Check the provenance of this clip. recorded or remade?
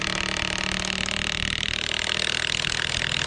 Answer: recorded